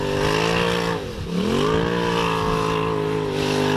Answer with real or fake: real